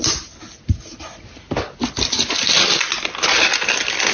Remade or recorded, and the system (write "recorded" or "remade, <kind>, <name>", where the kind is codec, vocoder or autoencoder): recorded